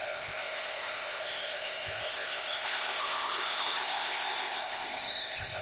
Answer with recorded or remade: remade